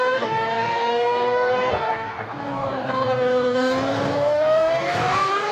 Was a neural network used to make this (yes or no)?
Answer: yes